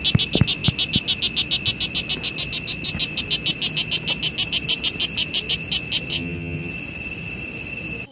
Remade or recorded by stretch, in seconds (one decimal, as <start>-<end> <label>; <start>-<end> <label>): 0.0-6.1 recorded; 6.1-6.7 remade; 6.7-8.1 recorded